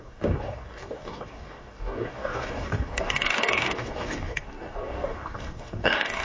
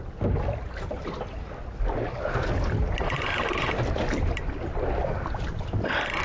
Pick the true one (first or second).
second